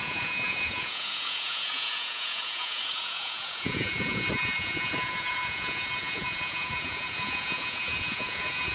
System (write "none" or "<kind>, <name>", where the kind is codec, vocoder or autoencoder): vocoder, Vocos